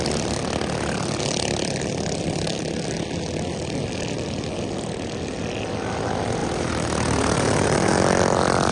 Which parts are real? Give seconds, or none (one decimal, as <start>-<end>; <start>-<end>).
0.0-6.4; 7.9-8.7